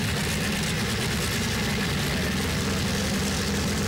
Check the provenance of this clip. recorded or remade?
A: recorded